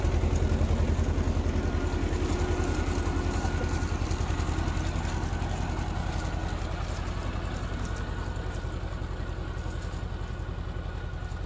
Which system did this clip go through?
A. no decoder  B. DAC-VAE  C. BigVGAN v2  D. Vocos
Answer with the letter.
A